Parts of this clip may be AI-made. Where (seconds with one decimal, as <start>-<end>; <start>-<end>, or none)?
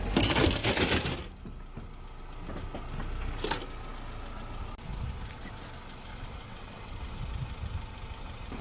6.1-7.1